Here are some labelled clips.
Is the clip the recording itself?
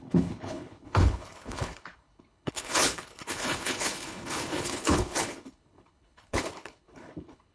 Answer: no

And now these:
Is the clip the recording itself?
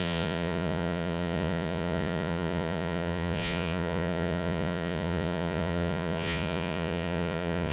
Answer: no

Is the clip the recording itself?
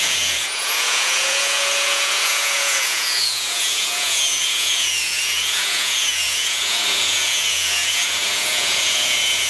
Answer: no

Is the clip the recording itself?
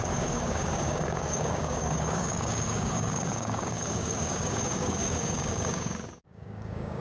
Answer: no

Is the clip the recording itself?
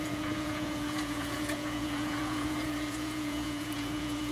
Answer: no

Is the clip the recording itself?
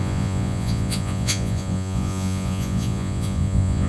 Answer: no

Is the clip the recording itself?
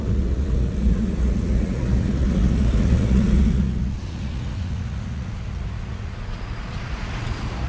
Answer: no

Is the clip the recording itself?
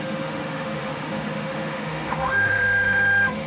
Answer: no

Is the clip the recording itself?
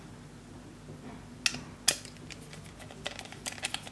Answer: yes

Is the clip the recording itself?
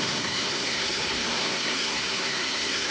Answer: no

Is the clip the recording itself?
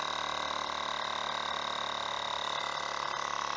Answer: yes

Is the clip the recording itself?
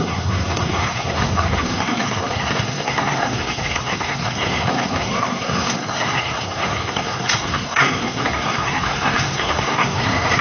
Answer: no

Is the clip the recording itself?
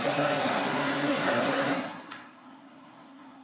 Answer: no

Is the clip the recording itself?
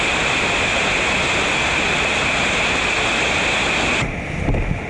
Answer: yes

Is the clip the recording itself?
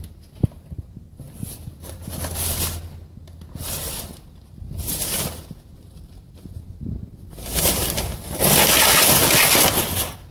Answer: yes